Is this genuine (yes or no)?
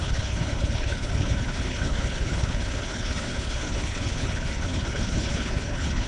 no